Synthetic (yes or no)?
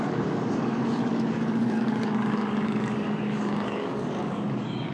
yes